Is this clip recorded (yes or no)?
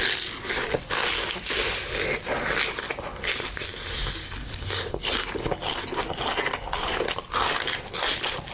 yes